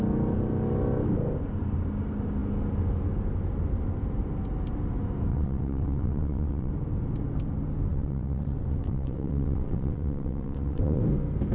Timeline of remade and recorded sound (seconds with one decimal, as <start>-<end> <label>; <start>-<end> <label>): 0.0-5.3 recorded; 5.3-6.7 remade; 6.7-7.9 recorded; 7.9-11.0 remade; 11.0-11.5 recorded